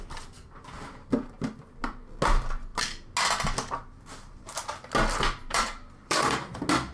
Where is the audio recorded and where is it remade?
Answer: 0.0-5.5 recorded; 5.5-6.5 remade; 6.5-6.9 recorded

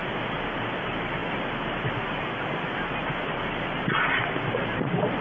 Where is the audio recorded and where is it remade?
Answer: 0.0-5.2 recorded

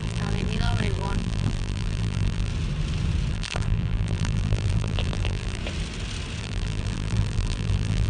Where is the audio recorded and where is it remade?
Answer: 0.0-2.5 remade; 2.5-3.3 recorded; 3.3-5.6 remade; 5.6-6.4 recorded; 6.4-8.1 remade

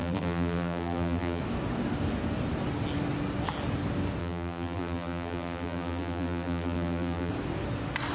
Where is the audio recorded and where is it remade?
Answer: 0.0-1.4 remade; 1.4-4.2 recorded; 4.2-7.3 remade; 7.3-8.1 recorded

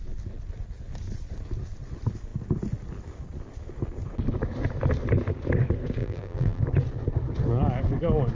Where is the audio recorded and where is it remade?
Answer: 0.0-6.0 recorded; 6.0-6.6 remade; 6.6-8.3 recorded

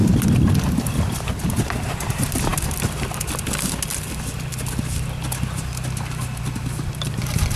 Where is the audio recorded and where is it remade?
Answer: 0.0-7.6 recorded

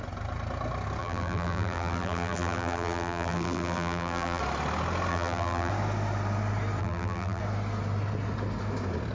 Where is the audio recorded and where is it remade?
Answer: 0.0-1.0 recorded; 1.0-4.4 remade; 4.4-5.1 recorded; 5.1-5.7 remade; 5.7-6.8 recorded; 6.8-7.4 remade; 7.4-9.1 recorded

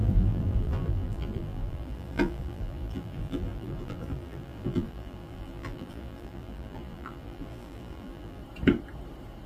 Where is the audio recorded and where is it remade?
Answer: 0.0-8.4 remade; 8.4-9.5 recorded